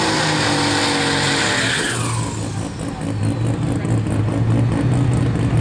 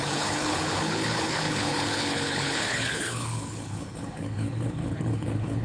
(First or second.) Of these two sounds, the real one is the first